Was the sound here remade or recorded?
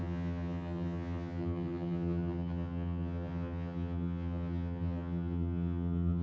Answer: remade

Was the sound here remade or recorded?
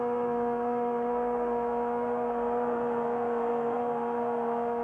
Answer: remade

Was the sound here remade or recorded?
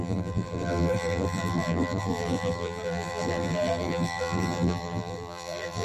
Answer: remade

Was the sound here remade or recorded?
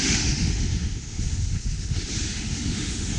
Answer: remade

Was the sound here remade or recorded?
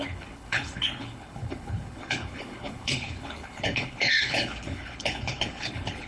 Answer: remade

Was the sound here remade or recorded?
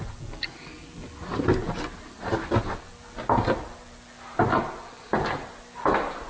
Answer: recorded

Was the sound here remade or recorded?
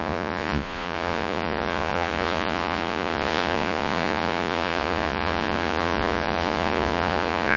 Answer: remade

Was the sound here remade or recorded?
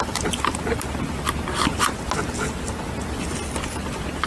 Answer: recorded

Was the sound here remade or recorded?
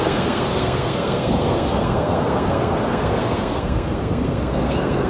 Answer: remade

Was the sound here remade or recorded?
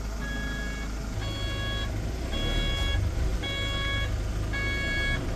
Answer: recorded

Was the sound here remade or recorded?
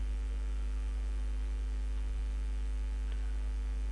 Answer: recorded